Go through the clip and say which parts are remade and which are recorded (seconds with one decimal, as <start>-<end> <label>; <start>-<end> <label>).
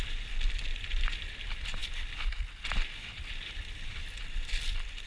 0.0-5.1 remade